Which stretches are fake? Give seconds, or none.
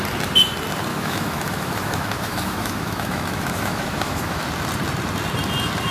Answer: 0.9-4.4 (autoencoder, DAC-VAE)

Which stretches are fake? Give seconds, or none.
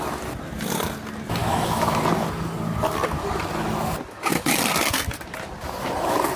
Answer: 1.4-2.0 (autoencoder, DAC-VAE)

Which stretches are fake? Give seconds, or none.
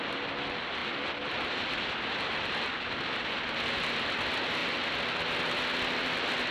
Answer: none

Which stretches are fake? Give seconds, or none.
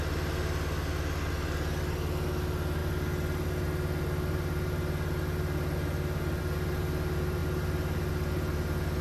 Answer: none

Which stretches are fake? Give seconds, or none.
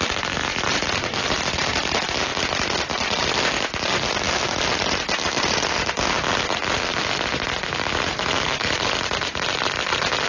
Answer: none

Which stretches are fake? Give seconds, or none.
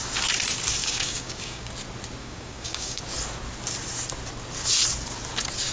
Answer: 0.8-1.7 (codec, DAC); 2.2-3.0